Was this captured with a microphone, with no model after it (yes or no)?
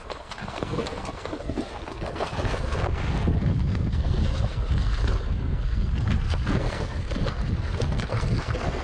no